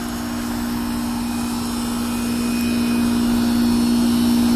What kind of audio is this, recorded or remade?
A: recorded